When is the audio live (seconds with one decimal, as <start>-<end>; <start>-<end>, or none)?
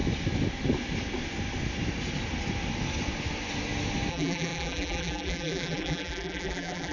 0.0-4.1